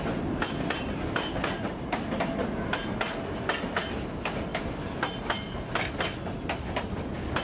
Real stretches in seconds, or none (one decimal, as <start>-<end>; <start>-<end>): 0.0-7.4